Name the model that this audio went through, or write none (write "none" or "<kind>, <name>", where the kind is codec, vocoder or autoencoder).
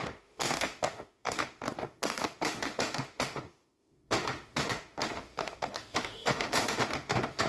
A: autoencoder, DAC-VAE